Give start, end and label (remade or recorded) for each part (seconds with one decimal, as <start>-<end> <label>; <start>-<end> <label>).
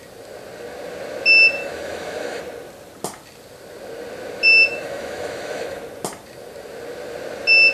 0.0-1.6 recorded; 1.6-2.4 remade; 2.4-4.7 recorded; 4.7-5.8 remade; 5.8-7.7 recorded